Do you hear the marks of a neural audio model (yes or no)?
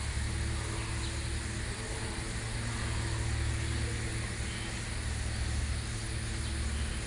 no